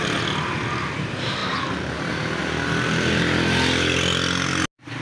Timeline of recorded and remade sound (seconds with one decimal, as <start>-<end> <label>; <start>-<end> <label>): 0.0-5.0 recorded